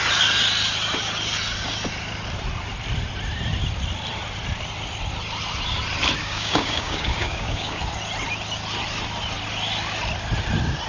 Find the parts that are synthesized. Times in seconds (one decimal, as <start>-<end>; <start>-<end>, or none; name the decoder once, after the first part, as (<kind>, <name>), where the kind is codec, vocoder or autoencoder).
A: 6.2-7.8 (codec, DAC)